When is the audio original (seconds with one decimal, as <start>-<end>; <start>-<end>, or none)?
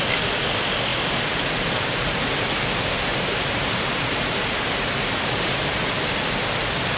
0.0-0.9; 2.4-3.1; 5.7-7.0